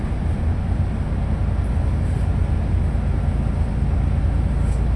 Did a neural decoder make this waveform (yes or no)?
no